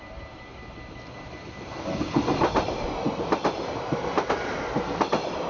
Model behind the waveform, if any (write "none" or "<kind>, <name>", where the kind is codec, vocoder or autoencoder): none